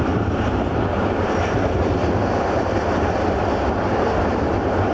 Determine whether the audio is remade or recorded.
recorded